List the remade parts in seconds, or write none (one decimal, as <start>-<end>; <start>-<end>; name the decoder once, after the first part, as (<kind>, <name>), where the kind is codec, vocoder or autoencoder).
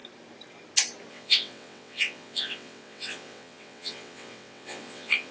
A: 1.1-5.3 (vocoder, WaveNeXt)